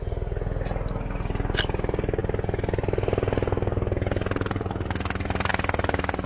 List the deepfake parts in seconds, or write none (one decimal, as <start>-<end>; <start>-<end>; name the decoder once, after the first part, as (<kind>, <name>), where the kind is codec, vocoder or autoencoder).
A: none